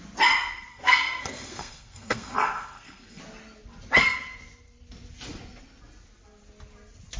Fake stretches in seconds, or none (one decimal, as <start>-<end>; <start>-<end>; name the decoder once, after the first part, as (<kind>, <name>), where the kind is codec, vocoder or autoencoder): 0.7-3.2 (codec, SNAC)